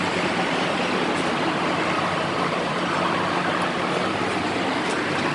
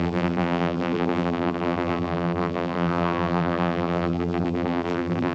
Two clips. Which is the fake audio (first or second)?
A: second